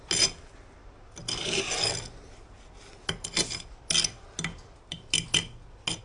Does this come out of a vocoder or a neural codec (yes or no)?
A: no